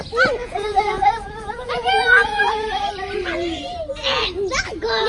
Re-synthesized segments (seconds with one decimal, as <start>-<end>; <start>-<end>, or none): 0.4-2.9